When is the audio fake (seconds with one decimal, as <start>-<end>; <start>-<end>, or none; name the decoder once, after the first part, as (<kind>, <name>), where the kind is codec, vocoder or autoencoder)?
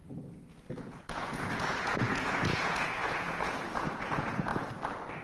0.8-4.5 (vocoder, Vocos)